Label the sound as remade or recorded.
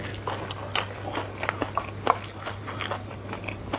recorded